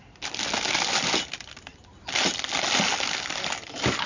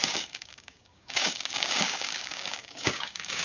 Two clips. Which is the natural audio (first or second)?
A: first